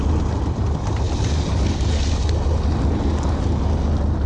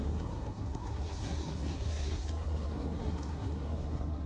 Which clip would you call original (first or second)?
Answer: first